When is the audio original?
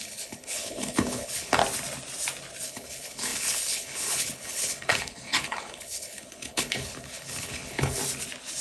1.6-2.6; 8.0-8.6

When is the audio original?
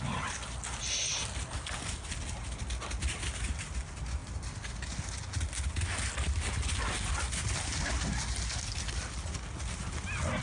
0.0-10.4